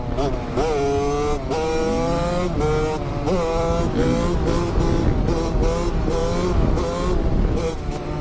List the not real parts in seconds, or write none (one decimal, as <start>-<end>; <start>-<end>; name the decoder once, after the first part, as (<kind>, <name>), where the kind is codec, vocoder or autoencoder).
none